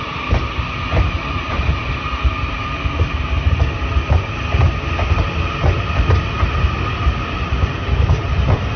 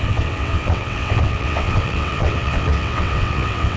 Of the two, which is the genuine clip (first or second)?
first